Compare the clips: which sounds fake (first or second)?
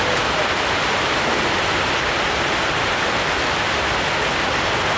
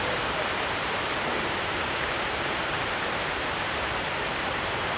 second